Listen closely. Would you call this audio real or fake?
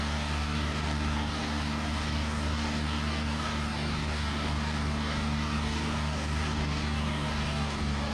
fake